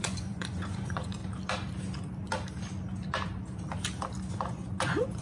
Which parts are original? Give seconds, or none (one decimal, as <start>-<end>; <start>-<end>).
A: 1.2-4.3